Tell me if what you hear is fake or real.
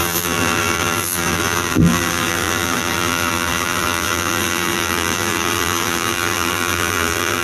fake